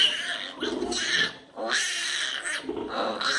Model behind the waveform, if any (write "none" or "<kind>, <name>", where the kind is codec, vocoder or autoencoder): none